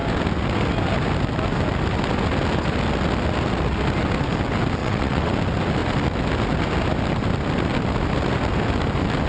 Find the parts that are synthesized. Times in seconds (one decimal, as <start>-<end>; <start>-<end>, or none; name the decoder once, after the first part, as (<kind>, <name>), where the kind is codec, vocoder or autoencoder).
4.8-5.3 (vocoder, WaveNeXt)